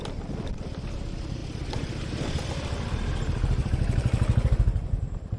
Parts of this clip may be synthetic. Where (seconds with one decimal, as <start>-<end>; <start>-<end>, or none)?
0.0-5.4